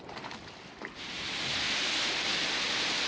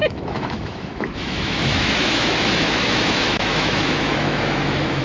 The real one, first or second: first